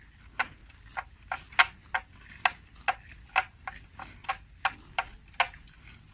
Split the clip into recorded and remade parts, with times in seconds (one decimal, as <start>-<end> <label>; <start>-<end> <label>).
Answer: 0.0-6.1 recorded